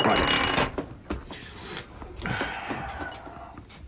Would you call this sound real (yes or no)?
yes